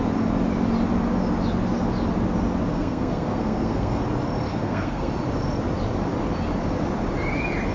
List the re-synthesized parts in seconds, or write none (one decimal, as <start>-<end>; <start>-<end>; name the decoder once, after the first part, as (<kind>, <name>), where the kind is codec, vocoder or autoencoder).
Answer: 2.7-4.0 (codec, SNAC); 4.5-5.1